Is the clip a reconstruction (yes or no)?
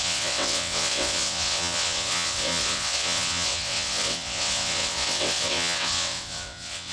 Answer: yes